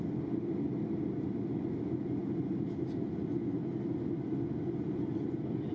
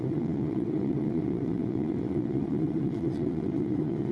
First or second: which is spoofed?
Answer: second